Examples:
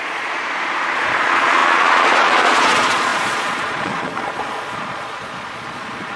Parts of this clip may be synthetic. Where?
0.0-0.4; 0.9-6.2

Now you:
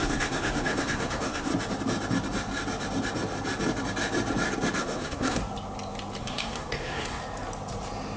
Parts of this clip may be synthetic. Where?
0.0-1.5; 4.8-5.4; 6.2-7.2

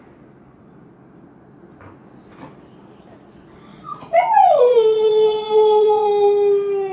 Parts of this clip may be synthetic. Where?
3.7-6.1

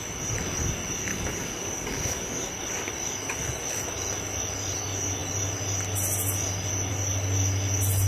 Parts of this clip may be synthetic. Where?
1.1-2.5

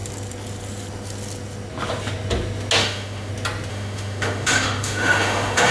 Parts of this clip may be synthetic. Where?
2.8-3.3; 3.7-5.7

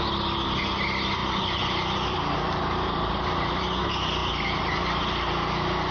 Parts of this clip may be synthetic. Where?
none

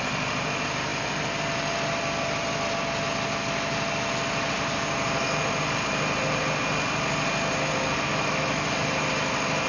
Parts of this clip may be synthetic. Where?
8.1-8.7